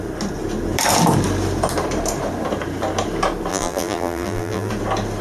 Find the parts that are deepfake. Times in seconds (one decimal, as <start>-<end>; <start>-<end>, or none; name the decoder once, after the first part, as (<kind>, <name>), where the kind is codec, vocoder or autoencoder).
3.5-4.7 (vocoder, BigVGAN v2)